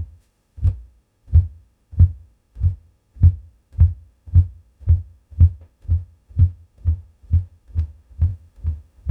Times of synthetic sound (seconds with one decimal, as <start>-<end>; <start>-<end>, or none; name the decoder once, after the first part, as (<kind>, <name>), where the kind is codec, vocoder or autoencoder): 0.0-9.1 (autoencoder, DAC-VAE)